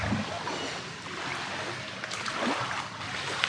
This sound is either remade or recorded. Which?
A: recorded